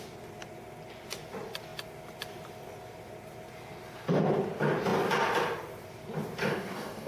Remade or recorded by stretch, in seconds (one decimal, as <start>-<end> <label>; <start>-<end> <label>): 0.0-6.4 recorded; 6.4-7.1 remade